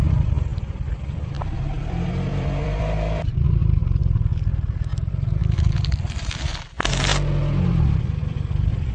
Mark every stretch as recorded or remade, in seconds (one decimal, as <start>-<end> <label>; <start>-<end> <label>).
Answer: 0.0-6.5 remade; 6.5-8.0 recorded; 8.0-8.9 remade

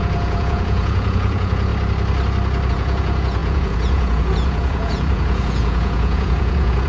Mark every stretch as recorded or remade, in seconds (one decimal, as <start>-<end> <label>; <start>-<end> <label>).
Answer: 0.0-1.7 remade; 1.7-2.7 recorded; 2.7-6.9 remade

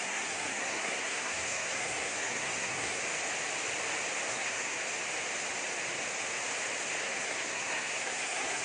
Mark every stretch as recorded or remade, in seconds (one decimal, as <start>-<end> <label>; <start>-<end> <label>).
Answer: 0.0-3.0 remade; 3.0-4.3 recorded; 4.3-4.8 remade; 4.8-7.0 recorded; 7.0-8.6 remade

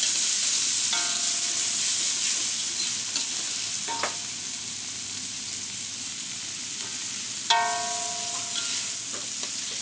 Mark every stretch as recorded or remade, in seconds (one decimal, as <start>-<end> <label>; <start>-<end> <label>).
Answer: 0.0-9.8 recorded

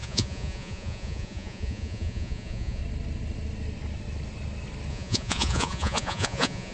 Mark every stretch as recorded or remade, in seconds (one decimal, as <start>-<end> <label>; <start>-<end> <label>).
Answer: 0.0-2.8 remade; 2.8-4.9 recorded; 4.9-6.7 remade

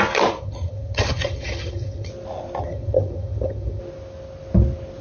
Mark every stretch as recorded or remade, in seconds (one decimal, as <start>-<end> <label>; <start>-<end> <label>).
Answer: 0.0-0.4 recorded; 0.4-2.1 remade; 2.1-2.6 recorded; 2.6-3.8 remade; 3.8-5.0 recorded

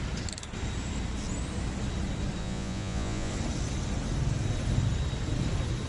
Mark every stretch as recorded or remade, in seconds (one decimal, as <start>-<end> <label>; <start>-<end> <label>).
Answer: 0.0-2.4 recorded; 2.4-3.3 remade; 3.3-5.9 recorded